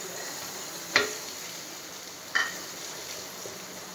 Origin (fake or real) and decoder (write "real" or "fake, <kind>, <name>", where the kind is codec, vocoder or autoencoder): fake, vocoder, BigVGAN v2